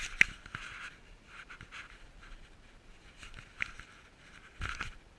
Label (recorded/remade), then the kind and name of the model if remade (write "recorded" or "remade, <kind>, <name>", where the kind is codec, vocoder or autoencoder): recorded